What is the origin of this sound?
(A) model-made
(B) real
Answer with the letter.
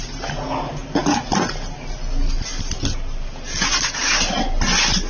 B